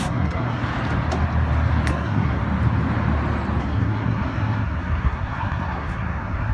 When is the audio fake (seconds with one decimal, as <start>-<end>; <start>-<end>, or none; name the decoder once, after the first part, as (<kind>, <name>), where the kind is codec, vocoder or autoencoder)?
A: 0.0-0.6 (codec, SNAC); 1.9-2.4; 3.6-6.5